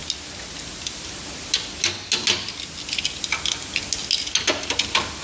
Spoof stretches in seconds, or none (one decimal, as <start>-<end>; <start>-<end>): none